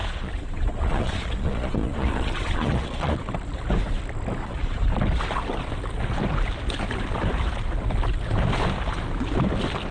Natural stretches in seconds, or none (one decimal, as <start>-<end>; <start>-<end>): 3.2-4.4; 4.9-9.9